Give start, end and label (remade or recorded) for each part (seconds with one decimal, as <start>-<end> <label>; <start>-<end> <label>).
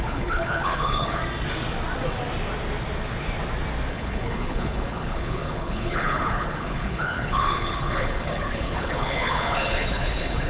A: 0.0-1.2 remade; 1.2-3.9 recorded; 3.9-10.5 remade